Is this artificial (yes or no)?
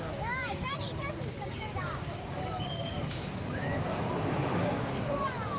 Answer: yes